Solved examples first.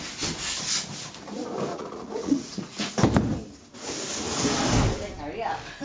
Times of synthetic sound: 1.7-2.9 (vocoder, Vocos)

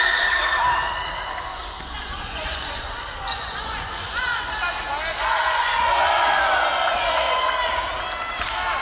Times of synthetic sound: 1.5-4.5 (vocoder, Vocos); 5.1-7.5

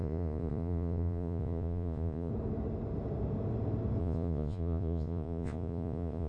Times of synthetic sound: 0.0-2.3 (vocoder, Vocos); 4.0-6.3

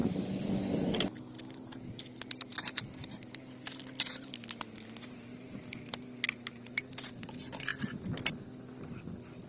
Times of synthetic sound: none

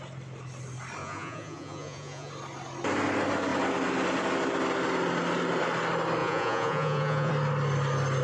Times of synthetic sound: 1.0-2.3 (vocoder, Vocos); 6.2-7.3

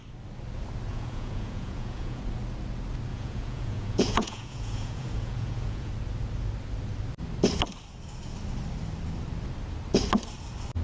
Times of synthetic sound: 0.9-2.2 (vocoder, Vocos); 3.1-5.9